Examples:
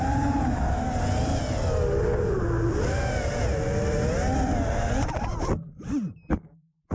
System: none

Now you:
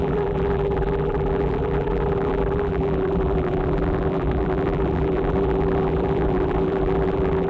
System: vocoder, BigVGAN v2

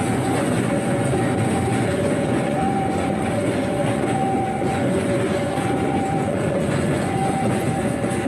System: vocoder, Vocos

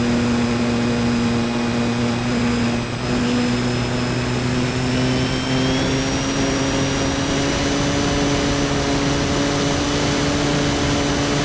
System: none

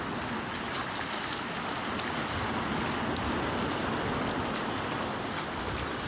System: none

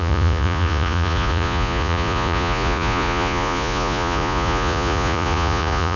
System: vocoder, Vocos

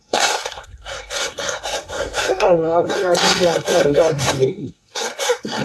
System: codec, SNAC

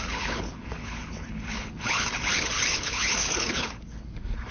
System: codec, HILCodec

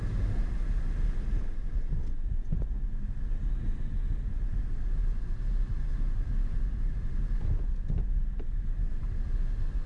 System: none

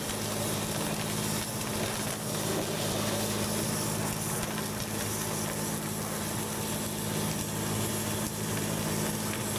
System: none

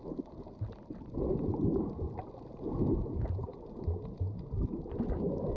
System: none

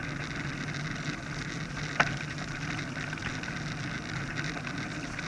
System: none